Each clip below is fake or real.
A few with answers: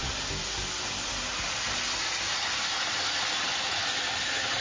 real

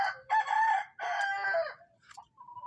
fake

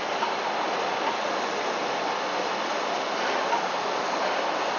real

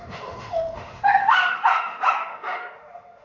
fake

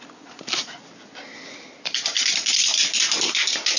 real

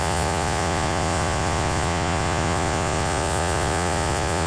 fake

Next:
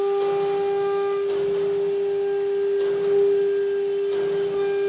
real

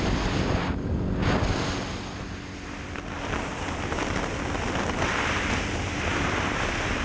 real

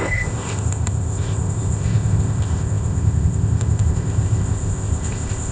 fake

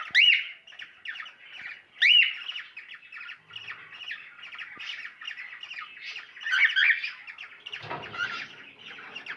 real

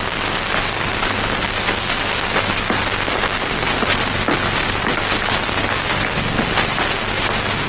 real